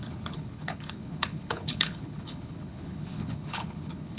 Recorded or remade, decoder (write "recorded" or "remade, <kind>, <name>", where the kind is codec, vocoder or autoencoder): remade, codec, HILCodec